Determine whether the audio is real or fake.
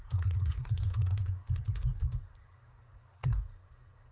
fake